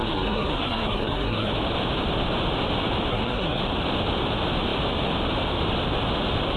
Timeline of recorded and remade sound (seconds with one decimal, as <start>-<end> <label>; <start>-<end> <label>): 0.0-1.5 remade; 1.5-3.1 recorded; 3.1-3.6 remade; 3.6-6.6 recorded